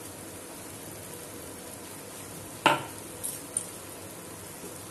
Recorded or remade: recorded